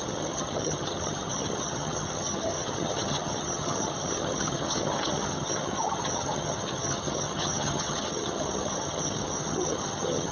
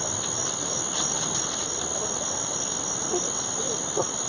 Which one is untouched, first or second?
second